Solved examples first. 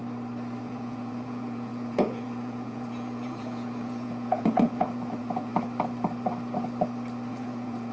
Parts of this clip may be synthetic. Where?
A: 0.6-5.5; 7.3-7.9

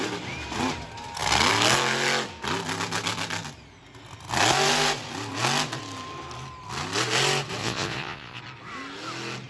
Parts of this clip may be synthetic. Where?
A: 7.6-8.4

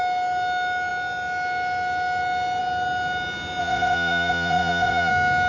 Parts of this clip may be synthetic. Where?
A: 3.6-5.1

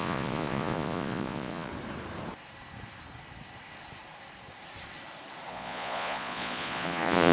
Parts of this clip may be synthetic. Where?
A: 0.0-1.7; 5.5-7.3

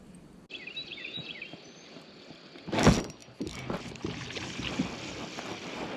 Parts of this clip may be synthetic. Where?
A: 0.9-1.4